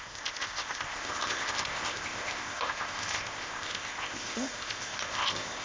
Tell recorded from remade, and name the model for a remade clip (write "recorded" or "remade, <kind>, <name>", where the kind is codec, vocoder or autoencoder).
remade, codec, ZipCodec